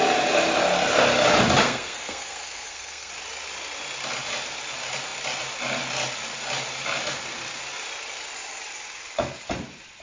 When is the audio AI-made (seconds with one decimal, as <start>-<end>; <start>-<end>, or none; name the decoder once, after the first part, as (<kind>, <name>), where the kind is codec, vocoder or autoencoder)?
1.6-3.1 (codec, SNAC)